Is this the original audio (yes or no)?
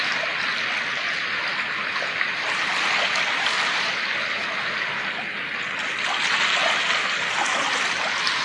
yes